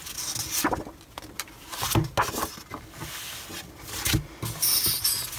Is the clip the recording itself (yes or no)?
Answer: yes